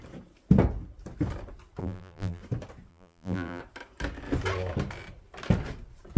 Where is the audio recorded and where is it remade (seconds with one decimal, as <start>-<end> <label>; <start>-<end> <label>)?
0.0-1.8 recorded; 1.8-2.4 remade; 2.4-2.9 recorded; 2.9-3.6 remade; 3.6-6.2 recorded

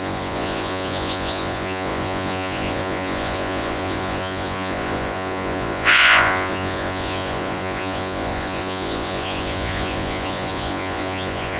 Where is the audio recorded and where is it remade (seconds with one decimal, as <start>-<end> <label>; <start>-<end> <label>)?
0.0-11.6 remade

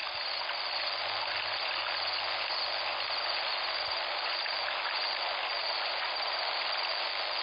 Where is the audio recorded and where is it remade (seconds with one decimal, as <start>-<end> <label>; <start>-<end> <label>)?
0.0-7.4 recorded

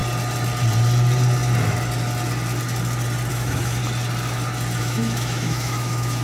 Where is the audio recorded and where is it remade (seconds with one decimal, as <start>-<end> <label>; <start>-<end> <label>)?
0.0-3.3 recorded; 3.3-3.8 remade; 3.8-4.8 recorded; 4.8-6.2 remade

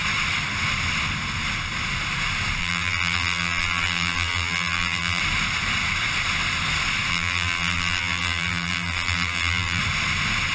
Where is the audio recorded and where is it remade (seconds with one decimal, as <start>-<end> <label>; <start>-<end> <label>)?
0.0-2.6 recorded; 2.6-5.2 remade; 5.2-7.1 recorded; 7.1-9.8 remade; 9.8-10.5 recorded

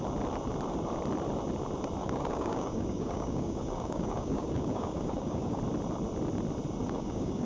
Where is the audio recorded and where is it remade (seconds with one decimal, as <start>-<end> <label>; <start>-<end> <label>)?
0.0-2.0 recorded; 2.0-5.6 remade; 5.6-6.8 recorded; 6.8-7.5 remade

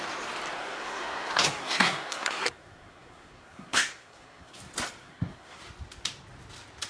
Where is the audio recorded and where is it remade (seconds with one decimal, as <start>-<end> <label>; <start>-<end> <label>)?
0.0-0.6 recorded; 0.6-4.6 remade; 4.6-5.0 recorded; 5.0-5.6 remade; 5.6-6.9 recorded

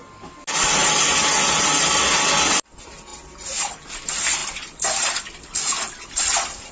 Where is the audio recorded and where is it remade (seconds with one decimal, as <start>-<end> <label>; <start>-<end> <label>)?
0.0-6.7 recorded